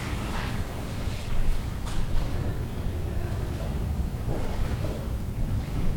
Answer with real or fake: fake